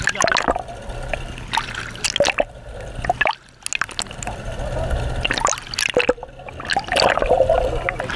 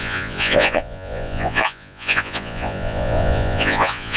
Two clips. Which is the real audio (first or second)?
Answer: first